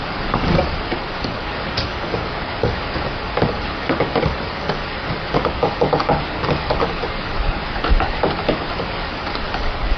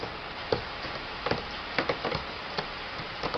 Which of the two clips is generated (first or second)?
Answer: first